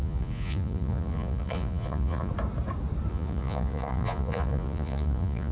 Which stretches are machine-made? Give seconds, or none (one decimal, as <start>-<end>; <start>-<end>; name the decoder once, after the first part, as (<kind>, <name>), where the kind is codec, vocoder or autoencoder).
0.0-2.3 (vocoder, Vocos); 3.1-5.5